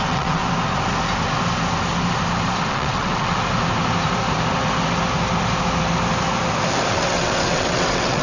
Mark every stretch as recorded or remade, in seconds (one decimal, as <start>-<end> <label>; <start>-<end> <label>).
0.0-0.4 remade; 0.4-2.7 recorded; 2.7-3.3 remade; 3.3-6.9 recorded; 6.9-8.2 remade